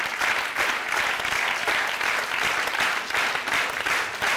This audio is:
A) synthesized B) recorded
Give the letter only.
B